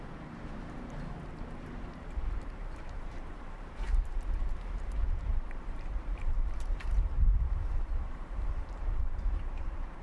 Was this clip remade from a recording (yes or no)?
yes